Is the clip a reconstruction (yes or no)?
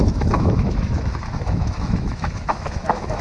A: yes